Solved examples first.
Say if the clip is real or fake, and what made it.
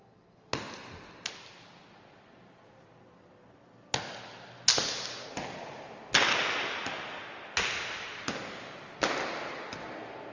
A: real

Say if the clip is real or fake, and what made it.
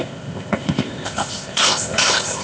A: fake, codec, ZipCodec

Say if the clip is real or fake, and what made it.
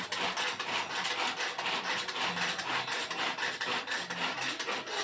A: real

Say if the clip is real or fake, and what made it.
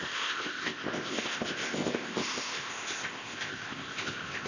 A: fake, codec, ZipCodec